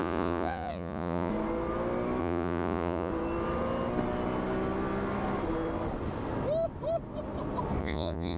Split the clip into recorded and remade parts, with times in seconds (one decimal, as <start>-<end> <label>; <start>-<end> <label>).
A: 0.0-1.3 remade; 1.3-2.2 recorded; 2.2-3.1 remade; 3.1-7.8 recorded; 7.8-8.4 remade